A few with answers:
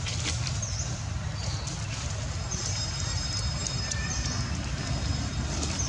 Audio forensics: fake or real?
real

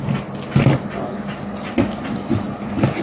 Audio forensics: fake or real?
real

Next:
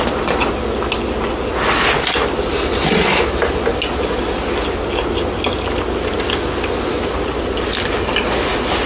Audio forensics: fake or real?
real